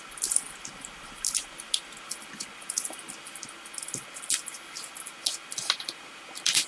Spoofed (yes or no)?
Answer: no